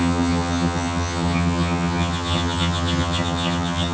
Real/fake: fake